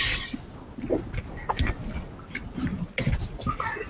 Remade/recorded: recorded